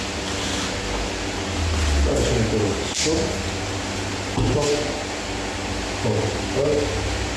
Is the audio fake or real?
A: real